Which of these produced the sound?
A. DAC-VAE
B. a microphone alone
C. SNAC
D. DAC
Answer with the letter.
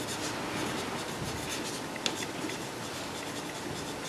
B